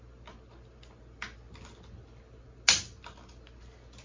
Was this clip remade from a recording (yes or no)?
no